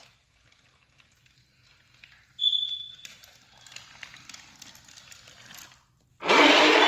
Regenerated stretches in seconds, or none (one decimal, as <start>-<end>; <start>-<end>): 2.6-3.5